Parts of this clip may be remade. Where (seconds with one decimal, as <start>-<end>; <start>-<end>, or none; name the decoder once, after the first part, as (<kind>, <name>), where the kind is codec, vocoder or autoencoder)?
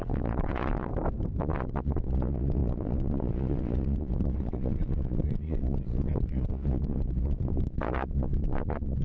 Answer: 0.0-0.9 (vocoder, Vocos); 1.4-9.0